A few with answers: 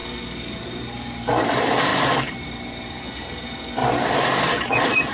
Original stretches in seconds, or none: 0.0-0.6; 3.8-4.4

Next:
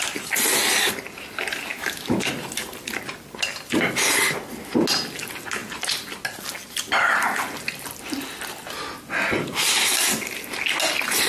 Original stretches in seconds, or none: 0.0-1.7; 2.3-11.3

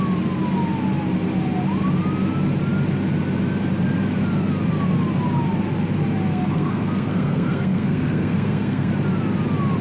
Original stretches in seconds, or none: 0.0-6.3; 8.9-9.8

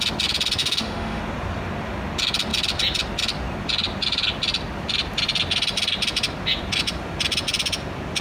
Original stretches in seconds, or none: 0.0-0.6; 1.2-8.2

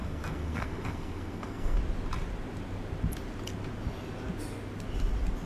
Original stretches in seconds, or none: 1.8-5.5

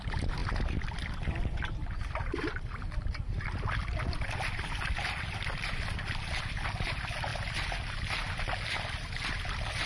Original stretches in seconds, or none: 0.0-9.9

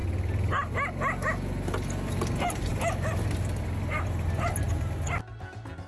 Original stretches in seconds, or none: 0.0-5.9

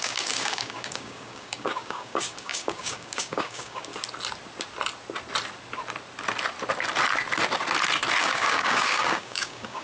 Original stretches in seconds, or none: 3.9-8.2